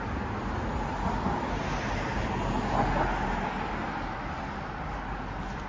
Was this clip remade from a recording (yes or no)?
no